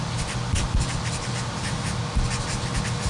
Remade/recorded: recorded